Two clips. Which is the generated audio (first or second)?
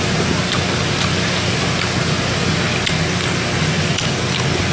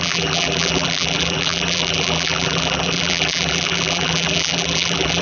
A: second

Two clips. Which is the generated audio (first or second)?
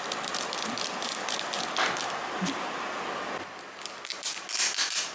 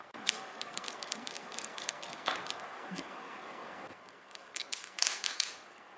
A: second